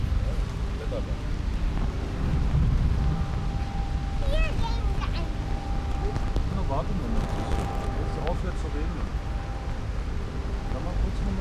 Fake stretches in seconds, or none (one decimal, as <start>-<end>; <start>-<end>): 8.3-9.1